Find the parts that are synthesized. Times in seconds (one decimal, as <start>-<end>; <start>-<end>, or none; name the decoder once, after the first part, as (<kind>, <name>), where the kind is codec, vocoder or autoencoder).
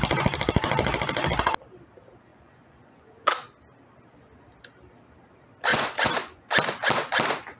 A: 2.3-3.3 (vocoder, Vocos); 5.7-6.5